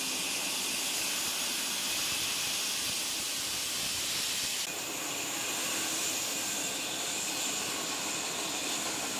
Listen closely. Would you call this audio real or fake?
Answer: real